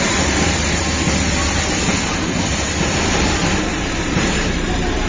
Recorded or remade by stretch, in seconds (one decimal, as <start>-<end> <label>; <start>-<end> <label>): 0.0-0.8 remade; 0.8-3.9 recorded; 3.9-5.1 remade